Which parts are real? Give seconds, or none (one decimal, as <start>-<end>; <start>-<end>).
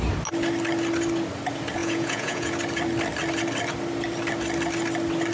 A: 0.0-1.8; 2.5-5.3